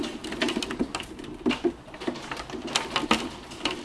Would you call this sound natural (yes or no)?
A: yes